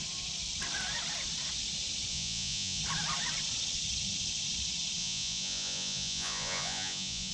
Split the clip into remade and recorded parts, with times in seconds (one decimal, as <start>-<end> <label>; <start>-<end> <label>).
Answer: 0.0-2.1 recorded; 2.1-2.8 remade; 2.8-5.0 recorded; 5.0-7.3 remade